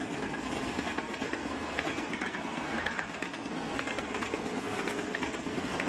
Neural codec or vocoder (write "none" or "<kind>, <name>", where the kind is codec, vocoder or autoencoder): codec, SNAC